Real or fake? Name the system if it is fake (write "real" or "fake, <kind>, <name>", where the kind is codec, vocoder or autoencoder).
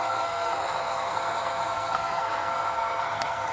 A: fake, codec, SNAC